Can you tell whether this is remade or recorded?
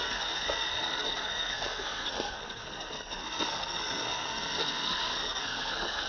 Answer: remade